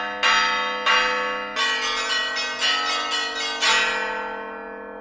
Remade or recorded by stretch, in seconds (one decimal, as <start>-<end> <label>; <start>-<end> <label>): 0.0-5.0 recorded